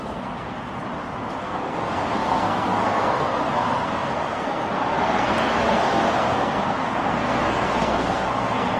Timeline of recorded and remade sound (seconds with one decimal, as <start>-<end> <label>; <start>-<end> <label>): 0.0-0.8 remade; 0.8-1.4 recorded; 1.4-8.8 remade